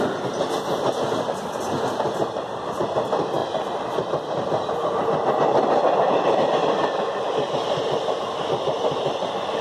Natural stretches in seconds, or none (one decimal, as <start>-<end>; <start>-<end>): 0.0-3.4; 7.3-9.6